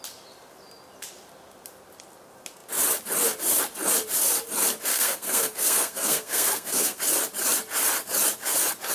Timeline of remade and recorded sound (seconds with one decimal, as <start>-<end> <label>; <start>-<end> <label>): 0.0-4.9 recorded; 4.9-7.0 remade; 7.0-8.9 recorded